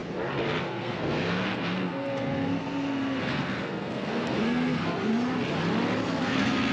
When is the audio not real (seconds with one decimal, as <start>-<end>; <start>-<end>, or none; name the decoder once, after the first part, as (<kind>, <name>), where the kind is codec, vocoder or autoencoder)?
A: 0.6-5.1 (codec, SNAC); 6.2-6.7